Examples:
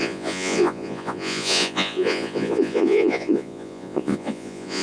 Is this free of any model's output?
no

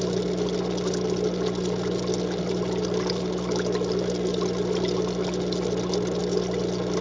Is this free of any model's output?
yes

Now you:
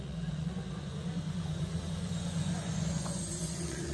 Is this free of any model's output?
no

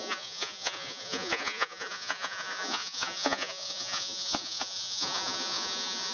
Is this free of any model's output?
no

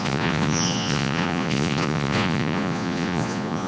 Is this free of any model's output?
no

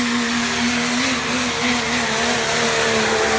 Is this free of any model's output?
yes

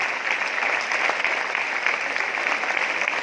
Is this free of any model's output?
yes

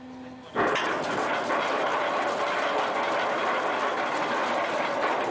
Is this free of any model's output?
yes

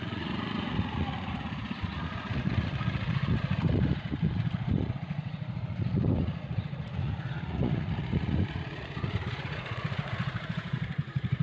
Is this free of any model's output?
no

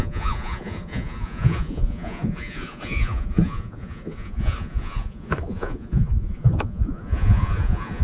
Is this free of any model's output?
no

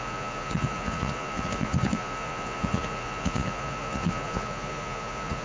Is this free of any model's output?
no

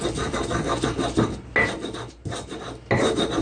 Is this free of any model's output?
yes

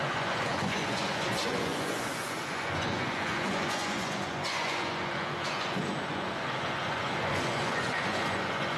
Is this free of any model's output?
no